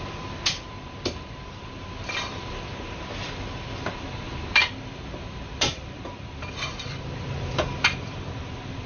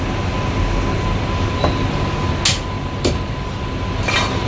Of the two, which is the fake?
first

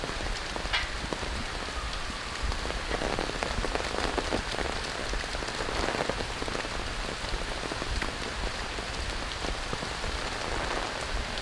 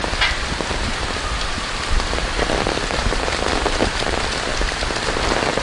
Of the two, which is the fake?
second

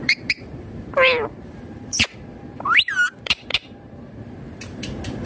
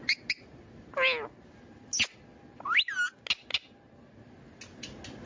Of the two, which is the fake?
first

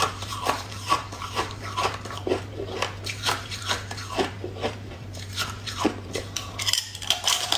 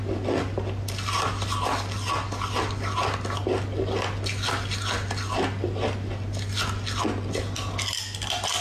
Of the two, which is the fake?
first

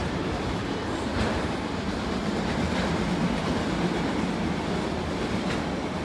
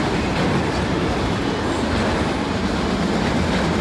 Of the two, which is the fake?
first